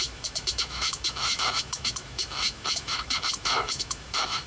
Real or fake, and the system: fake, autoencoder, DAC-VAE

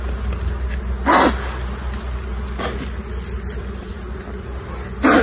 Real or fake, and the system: real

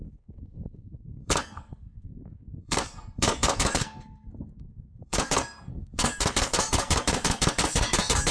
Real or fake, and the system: fake, codec, SNAC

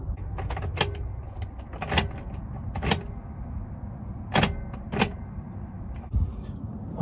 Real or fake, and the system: real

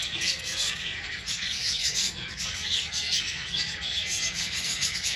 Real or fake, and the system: fake, codec, SNAC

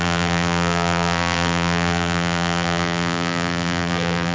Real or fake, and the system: fake, vocoder, BigVGAN v2